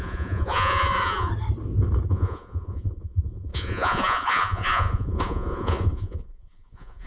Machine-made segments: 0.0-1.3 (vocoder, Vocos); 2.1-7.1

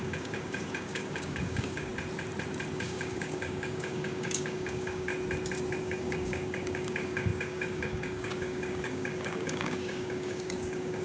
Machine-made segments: 0.0-1.9 (codec, DAC); 2.7-5.1; 5.8-11.0

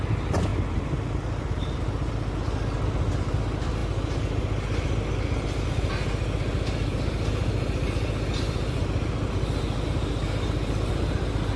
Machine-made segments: none